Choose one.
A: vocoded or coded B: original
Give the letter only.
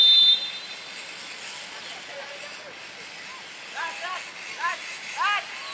B